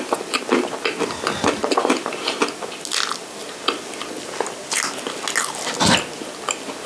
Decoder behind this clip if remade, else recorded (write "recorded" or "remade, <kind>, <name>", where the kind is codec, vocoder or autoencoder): recorded